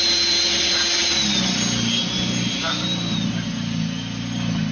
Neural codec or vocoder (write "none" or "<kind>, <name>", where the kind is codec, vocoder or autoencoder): none